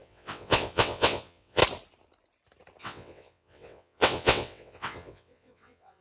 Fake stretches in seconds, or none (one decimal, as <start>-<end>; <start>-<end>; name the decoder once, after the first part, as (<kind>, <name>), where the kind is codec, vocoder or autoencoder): 0.0-1.6 (vocoder, WaveNeXt); 2.8-6.0